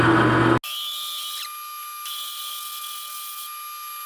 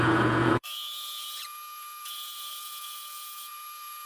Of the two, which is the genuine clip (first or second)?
first